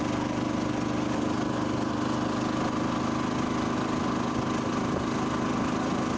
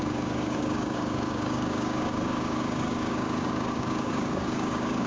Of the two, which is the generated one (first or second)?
second